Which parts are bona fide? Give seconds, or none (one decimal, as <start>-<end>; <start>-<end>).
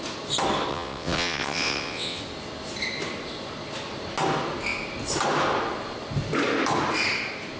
0.0-0.7; 2.2-7.6